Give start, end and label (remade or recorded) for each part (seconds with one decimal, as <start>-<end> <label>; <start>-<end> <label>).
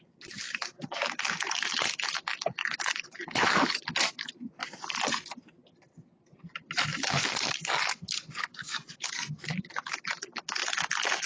0.0-2.6 recorded; 2.6-3.8 remade; 3.8-6.9 recorded; 6.9-9.1 remade; 9.1-11.3 recorded